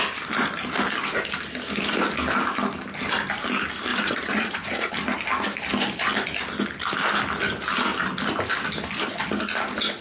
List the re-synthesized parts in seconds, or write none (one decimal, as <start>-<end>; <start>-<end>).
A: 3.9-4.9